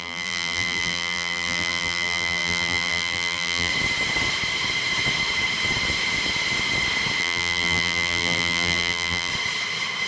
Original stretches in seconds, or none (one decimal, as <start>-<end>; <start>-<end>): 3.7-7.2; 9.3-10.1